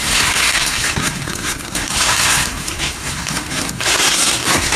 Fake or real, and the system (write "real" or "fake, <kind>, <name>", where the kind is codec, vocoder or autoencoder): fake, codec, SNAC